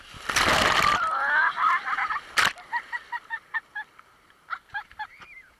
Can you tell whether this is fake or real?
real